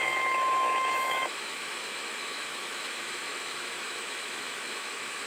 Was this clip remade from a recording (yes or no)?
yes